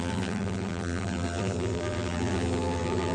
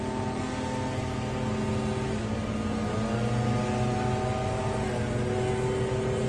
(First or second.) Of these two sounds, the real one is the second